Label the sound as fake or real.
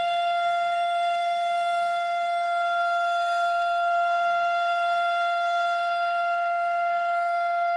fake